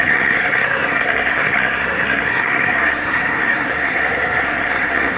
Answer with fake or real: fake